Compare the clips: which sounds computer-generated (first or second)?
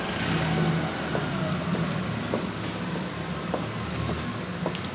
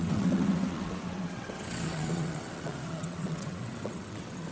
second